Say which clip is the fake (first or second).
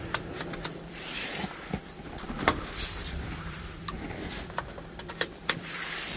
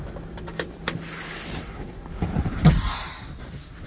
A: first